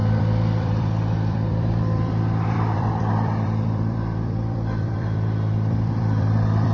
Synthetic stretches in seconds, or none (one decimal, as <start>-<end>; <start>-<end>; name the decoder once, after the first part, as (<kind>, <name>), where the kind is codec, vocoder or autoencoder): 0.0-6.7 (vocoder, BigVGAN v2)